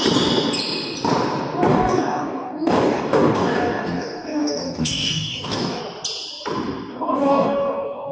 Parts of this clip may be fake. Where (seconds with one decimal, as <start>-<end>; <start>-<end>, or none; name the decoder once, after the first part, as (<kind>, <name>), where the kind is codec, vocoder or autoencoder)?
1.7-5.8 (codec, DAC); 6.9-8.1